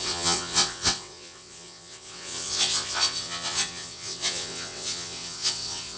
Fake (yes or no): yes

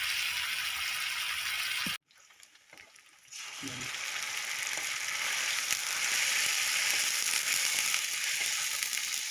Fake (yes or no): no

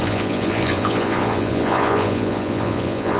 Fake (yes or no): yes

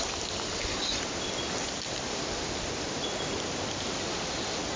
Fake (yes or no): no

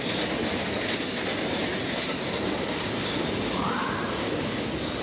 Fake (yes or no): no